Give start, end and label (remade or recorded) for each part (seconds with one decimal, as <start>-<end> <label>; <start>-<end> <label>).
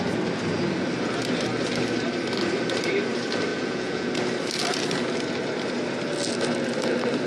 0.0-3.5 recorded; 3.5-4.1 remade; 4.1-7.3 recorded